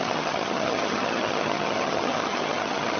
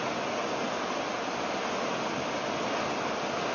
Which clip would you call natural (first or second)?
second